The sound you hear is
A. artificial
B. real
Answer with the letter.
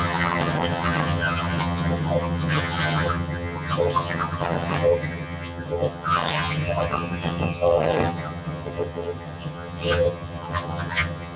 A